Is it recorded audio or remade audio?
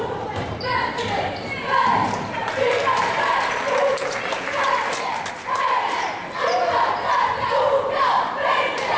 remade